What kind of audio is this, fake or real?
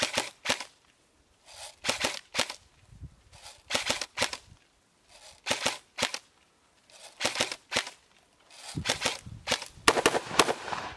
real